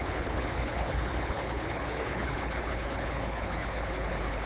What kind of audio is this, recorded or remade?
remade